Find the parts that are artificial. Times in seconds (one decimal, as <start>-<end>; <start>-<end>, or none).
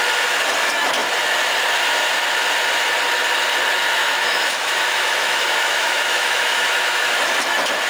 4.0-7.1